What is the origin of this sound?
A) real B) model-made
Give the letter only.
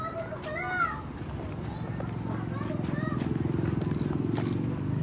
A